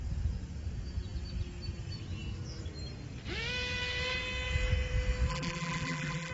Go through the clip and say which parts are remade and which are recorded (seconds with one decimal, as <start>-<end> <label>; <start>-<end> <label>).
0.0-5.3 recorded; 5.3-6.3 remade